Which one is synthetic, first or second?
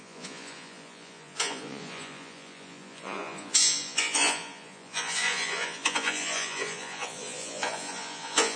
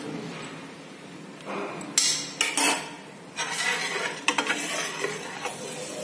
first